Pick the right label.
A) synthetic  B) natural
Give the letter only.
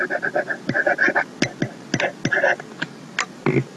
B